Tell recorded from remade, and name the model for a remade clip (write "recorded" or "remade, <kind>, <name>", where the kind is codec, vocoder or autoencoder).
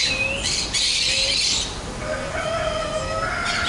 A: recorded